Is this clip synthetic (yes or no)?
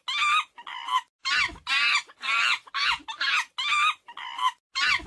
no